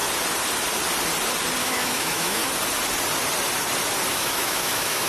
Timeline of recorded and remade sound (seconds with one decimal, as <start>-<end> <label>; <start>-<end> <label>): 0.0-1.6 recorded; 1.6-2.4 remade; 2.4-4.1 recorded; 4.1-5.1 remade